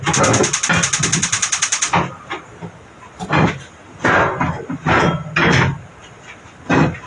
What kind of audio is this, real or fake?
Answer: real